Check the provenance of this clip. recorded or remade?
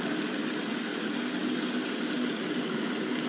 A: recorded